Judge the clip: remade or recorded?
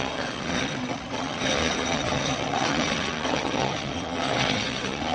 remade